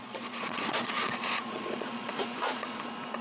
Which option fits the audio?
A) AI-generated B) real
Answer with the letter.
A